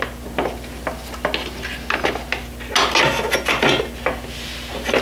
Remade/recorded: recorded